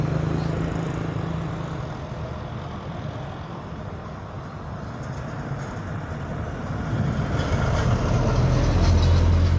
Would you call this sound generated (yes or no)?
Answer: no